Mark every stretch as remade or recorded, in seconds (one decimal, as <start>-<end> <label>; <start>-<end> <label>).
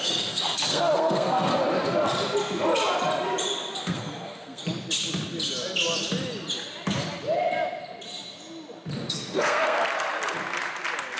0.0-1.5 remade; 1.5-3.8 recorded; 3.8-4.6 remade; 4.6-9.1 recorded; 9.1-9.8 remade; 9.8-11.2 recorded